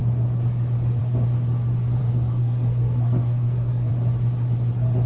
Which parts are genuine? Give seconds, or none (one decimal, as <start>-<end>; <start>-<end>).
0.0-2.0; 3.9-5.1